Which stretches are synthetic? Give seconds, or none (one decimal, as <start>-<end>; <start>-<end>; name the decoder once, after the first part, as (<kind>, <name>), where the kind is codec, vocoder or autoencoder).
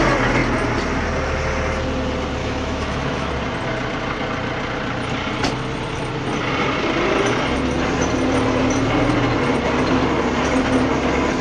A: 2.4-3.3 (autoencoder, DAC-VAE)